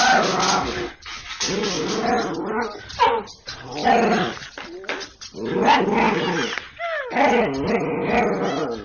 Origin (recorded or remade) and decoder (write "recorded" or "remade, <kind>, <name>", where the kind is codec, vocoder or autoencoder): recorded